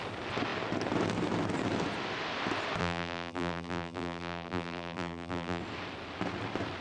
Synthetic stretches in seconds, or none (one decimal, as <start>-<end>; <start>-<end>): 2.8-5.6